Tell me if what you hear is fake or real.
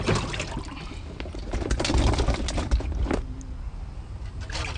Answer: real